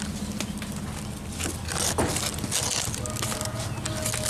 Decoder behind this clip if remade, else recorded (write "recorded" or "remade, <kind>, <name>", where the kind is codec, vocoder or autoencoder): recorded